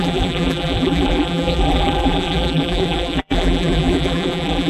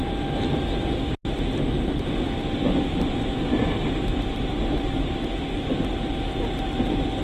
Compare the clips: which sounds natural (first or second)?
second